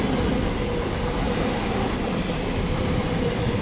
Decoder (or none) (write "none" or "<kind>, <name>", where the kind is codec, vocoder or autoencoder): vocoder, BigVGAN v2